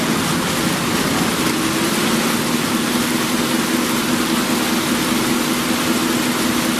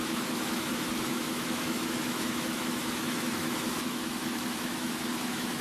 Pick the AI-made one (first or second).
second